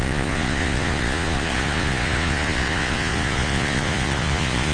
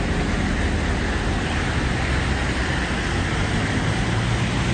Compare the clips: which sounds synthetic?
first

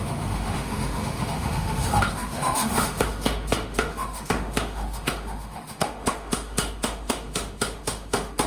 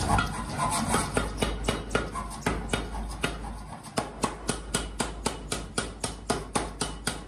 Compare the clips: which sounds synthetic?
first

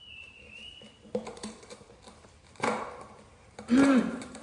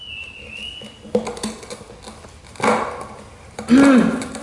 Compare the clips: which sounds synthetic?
first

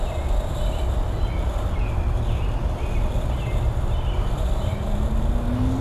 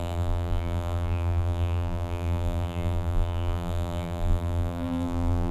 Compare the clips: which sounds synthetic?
second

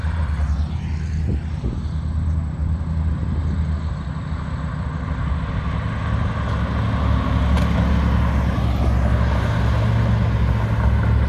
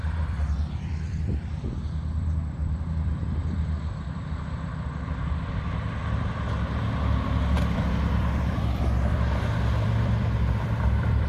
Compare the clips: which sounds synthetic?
second